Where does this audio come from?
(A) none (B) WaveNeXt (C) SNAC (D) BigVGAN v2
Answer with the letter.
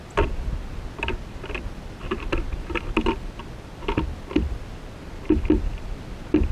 A